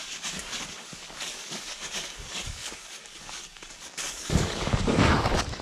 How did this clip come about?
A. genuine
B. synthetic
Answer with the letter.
B